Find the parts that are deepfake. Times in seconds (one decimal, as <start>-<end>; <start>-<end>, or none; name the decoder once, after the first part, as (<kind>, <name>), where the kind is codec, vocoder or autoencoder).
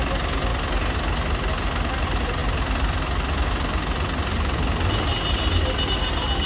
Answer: none